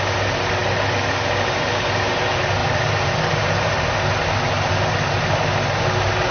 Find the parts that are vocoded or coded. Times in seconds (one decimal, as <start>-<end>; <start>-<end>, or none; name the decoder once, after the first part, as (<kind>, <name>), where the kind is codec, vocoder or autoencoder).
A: 2.6-4.3 (vocoder, BigVGAN v2)